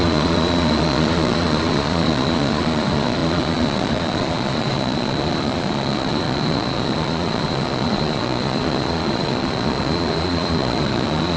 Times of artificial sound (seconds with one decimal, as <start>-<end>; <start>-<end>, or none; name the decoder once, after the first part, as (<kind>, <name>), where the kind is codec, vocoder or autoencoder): 0.0-11.4 (vocoder, Vocos)